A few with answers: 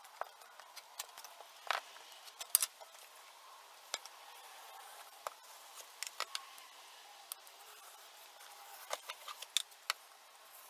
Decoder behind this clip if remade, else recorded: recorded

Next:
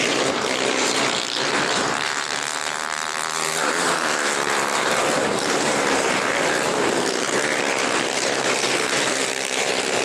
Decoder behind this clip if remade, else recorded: remade, vocoder, BigVGAN v2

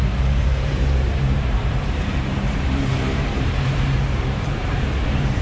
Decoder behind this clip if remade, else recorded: remade, vocoder, BigVGAN v2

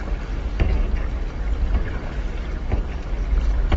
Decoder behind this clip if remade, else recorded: recorded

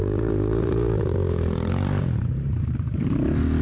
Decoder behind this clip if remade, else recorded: remade, vocoder, BigVGAN v2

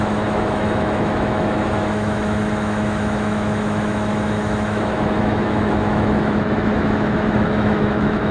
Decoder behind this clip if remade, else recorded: remade, autoencoder, DAC-VAE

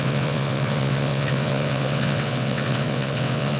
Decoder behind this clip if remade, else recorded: remade, vocoder, WaveNeXt